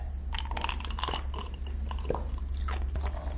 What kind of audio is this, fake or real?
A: real